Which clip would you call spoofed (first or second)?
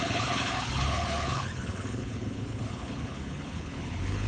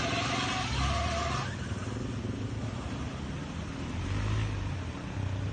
first